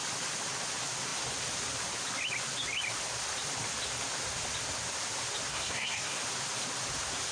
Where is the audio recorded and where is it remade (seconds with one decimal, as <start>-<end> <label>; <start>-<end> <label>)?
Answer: 0.0-5.5 recorded; 5.5-6.2 remade; 6.2-7.3 recorded